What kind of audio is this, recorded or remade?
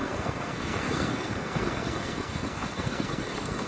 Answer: remade